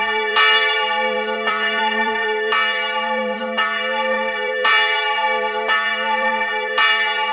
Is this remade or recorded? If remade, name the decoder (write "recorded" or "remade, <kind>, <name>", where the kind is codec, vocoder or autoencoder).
remade, vocoder, BigVGAN v2